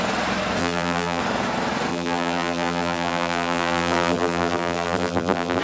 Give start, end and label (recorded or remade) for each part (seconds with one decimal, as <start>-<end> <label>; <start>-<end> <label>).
0.0-0.6 recorded; 0.6-1.2 remade; 1.2-1.9 recorded; 1.9-5.6 remade